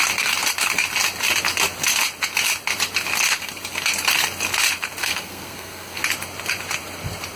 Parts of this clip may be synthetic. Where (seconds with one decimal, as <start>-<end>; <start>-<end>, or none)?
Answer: 5.0-6.0